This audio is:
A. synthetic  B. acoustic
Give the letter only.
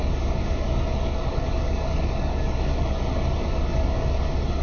A